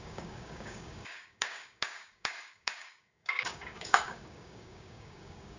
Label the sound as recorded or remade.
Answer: remade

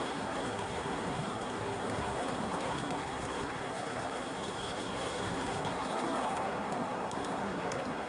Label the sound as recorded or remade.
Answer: remade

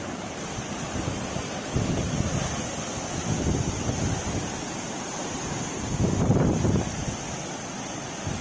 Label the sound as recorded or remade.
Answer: recorded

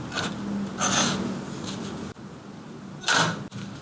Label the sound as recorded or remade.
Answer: recorded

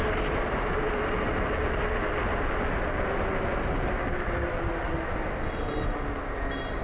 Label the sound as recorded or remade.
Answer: recorded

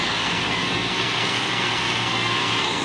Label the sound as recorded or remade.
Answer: remade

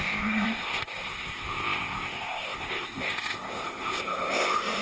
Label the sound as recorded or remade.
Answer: remade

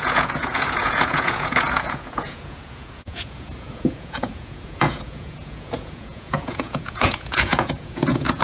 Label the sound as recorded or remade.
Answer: remade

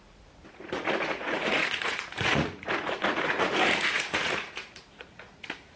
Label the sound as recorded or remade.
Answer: remade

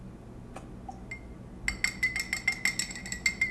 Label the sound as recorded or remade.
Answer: recorded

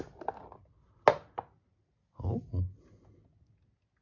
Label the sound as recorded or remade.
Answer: recorded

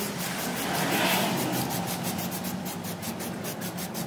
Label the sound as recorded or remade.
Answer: recorded